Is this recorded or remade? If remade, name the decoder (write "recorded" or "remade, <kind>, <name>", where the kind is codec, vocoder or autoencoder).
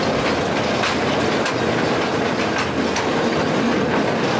recorded